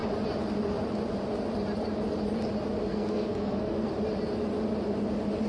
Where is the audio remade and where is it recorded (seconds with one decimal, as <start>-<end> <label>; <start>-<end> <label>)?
0.0-2.9 recorded; 2.9-3.9 remade; 3.9-5.5 recorded